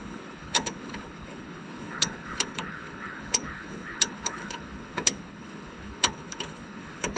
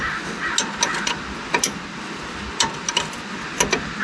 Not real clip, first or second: first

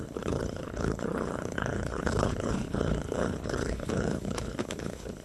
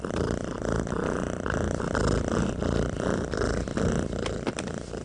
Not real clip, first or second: first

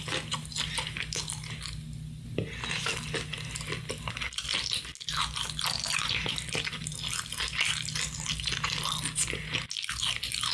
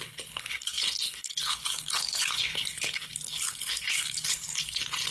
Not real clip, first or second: second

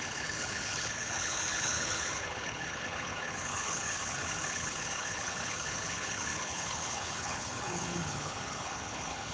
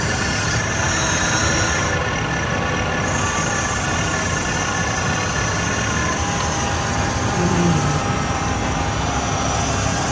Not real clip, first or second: first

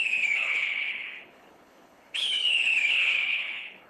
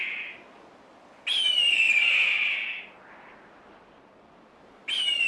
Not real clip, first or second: first